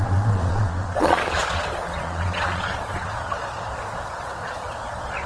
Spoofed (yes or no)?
yes